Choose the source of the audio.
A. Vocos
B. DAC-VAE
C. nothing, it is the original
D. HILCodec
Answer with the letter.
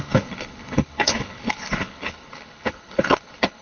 D